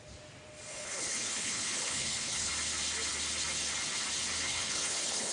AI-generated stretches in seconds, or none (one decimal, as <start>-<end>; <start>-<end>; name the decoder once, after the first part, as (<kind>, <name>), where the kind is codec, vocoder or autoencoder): 0.7-2.5 (codec, HILCodec); 4.5-5.3